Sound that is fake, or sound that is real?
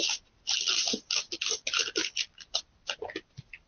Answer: real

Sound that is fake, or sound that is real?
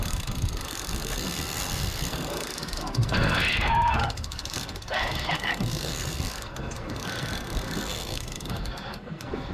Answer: fake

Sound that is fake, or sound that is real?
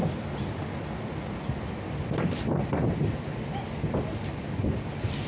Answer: real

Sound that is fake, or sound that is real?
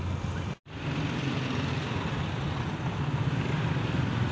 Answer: real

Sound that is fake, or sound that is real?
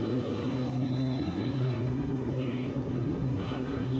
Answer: fake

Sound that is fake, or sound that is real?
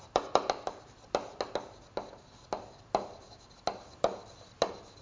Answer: real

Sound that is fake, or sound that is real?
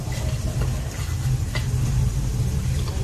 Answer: real